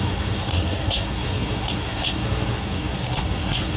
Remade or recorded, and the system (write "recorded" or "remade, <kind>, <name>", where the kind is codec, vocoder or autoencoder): remade, codec, SNAC